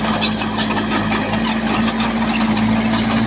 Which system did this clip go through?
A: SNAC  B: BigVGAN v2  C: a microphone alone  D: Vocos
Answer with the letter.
C